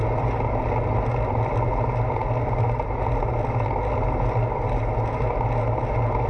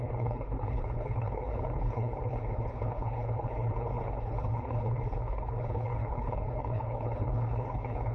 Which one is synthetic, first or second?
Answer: second